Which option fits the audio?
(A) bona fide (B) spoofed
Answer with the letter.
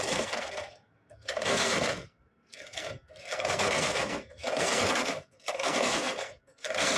B